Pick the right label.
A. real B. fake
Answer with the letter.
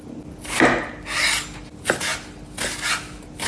A